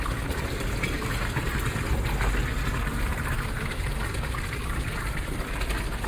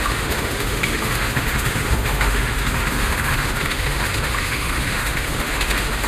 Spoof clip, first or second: second